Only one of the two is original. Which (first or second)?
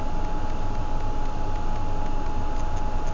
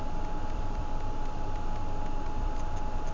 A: first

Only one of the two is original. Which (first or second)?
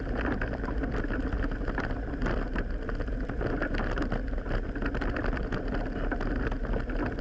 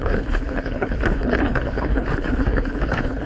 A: first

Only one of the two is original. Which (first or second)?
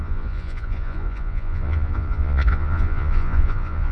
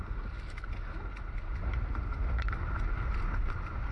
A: second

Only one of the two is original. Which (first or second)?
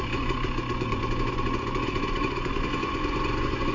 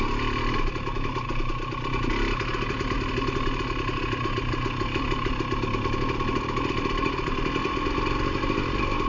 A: second